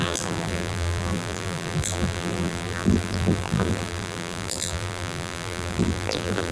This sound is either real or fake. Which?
fake